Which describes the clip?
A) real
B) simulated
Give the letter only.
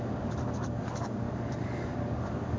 B